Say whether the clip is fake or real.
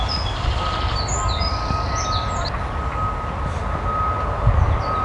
real